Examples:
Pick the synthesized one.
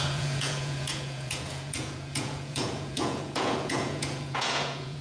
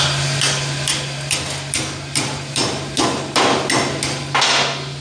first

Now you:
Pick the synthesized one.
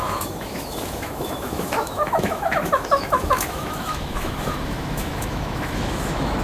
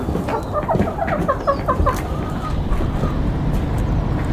first